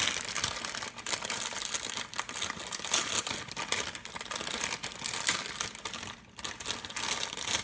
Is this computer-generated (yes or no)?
no